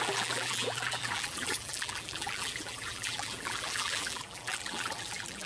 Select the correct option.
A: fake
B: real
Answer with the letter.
A